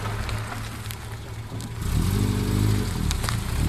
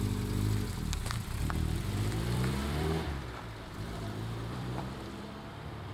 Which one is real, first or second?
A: first